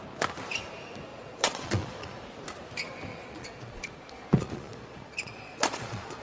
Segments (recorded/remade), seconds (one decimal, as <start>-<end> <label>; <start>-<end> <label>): 0.0-1.1 recorded; 1.1-2.2 remade; 2.2-3.1 recorded; 3.1-6.2 remade